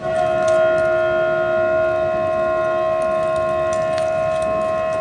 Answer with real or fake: real